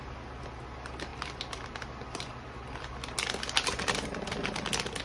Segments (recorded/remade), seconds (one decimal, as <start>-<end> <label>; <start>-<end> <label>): 0.0-5.0 recorded